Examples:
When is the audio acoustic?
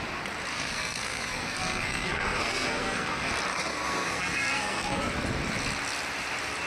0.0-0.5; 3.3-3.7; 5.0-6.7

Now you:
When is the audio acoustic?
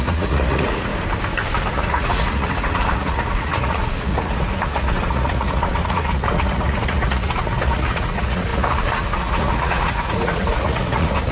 0.9-1.7